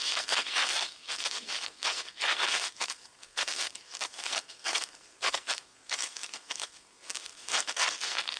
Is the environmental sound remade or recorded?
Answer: remade